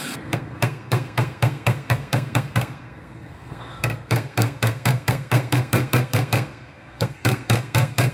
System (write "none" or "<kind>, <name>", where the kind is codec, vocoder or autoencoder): codec, SNAC